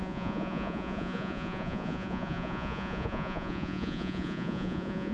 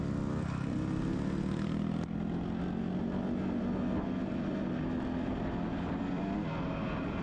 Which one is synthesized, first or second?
first